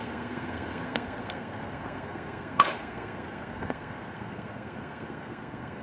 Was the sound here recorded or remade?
remade